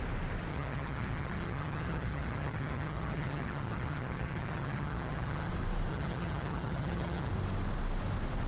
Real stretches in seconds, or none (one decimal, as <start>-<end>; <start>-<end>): 0.0-0.5; 5.5-5.9; 7.3-8.5